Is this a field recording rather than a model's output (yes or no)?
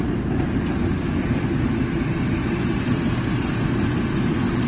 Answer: yes